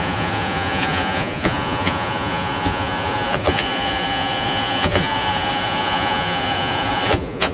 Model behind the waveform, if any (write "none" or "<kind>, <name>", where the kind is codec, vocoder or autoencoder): vocoder, Vocos